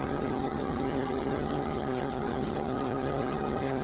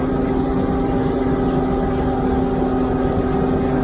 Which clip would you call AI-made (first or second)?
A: first